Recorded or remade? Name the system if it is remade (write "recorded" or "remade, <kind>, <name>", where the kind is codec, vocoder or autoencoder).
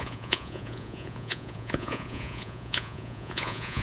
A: remade, vocoder, Vocos